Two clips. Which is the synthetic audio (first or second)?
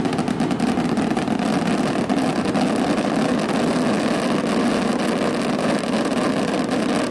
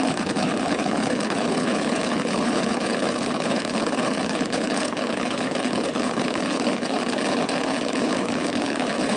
second